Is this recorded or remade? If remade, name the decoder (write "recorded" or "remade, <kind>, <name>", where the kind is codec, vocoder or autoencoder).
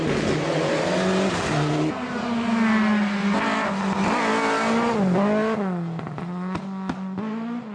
recorded